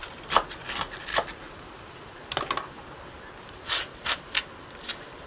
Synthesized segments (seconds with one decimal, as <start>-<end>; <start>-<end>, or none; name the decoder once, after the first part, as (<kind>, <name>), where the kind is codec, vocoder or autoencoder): none